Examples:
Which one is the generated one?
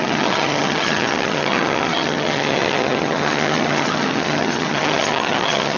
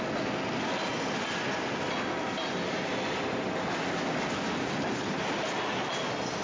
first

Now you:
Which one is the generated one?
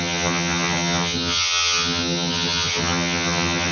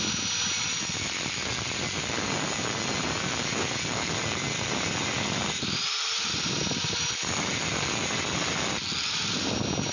first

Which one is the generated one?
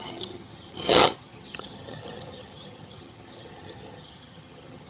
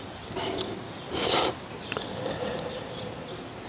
first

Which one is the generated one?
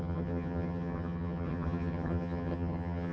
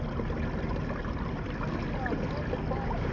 first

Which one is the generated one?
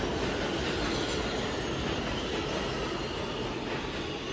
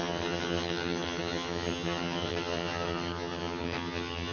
second